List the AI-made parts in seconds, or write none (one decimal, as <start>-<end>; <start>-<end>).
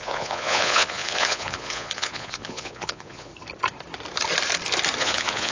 0.0-3.3; 5.0-5.5